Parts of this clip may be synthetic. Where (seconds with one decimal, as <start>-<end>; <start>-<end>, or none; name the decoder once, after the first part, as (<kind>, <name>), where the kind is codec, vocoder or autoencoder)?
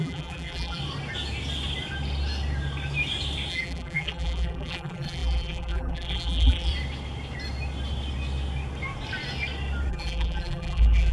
0.0-0.8 (vocoder, BigVGAN v2); 3.5-6.7; 9.9-11.1